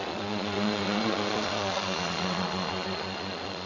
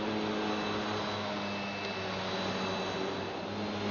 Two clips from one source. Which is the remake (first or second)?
first